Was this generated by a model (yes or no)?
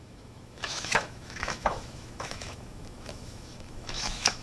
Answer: yes